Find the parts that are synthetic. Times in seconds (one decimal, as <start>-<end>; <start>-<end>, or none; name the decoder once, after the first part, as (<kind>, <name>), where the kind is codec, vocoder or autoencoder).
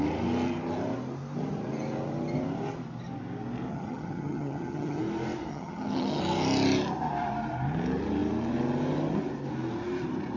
3.7-5.0 (vocoder, HiFi-GAN); 5.5-6.2